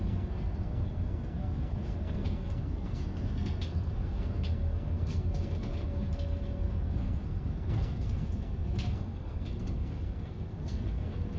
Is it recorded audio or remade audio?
remade